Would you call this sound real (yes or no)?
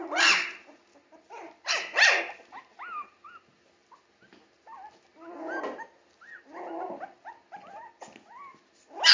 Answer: yes